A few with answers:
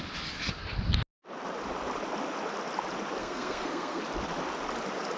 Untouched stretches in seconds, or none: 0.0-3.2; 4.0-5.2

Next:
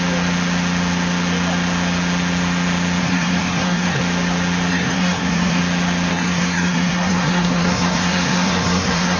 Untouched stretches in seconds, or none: 0.0-3.0; 4.0-4.7; 5.6-6.1

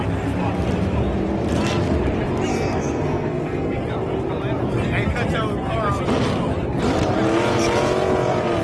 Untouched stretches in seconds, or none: 0.0-2.5; 3.8-8.6